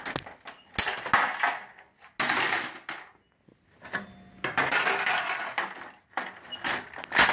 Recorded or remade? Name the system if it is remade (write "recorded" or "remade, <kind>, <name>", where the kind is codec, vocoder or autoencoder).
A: recorded